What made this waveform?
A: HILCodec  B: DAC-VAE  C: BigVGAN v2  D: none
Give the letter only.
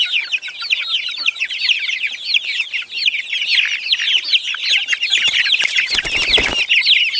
D